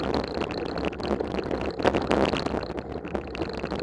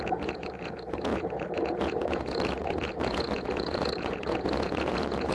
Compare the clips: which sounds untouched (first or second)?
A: first